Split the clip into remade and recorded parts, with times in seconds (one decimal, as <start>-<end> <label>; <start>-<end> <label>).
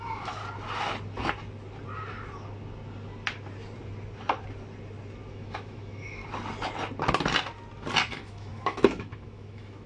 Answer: 0.0-0.4 remade; 0.4-5.3 recorded; 5.3-6.2 remade; 6.2-8.1 recorded; 8.1-9.9 remade